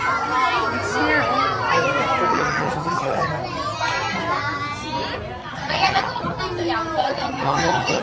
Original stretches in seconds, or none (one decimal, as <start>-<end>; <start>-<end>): 0.0-2.3; 3.3-5.4; 6.4-7.0